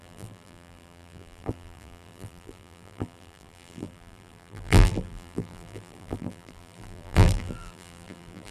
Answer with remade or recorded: remade